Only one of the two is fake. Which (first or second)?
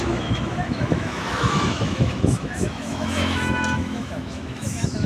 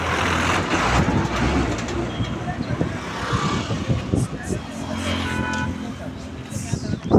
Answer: first